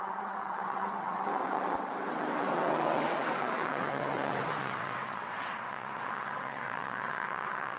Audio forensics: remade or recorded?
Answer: remade